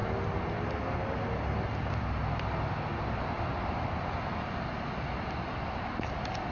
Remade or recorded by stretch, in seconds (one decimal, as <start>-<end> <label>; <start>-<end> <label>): 0.0-6.5 recorded